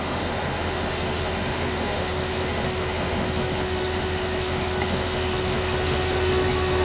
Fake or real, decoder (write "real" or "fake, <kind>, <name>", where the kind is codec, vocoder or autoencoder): fake, autoencoder, DAC-VAE